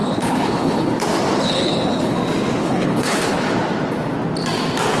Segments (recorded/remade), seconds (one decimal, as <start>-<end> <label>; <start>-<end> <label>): 0.0-0.9 remade; 0.9-1.4 recorded; 1.4-2.2 remade; 2.2-2.6 recorded; 2.6-3.5 remade; 3.5-5.0 recorded